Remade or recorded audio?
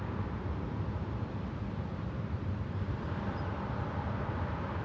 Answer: remade